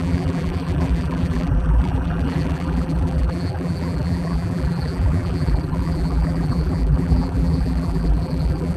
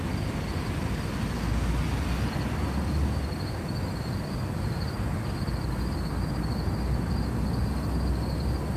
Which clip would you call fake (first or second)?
first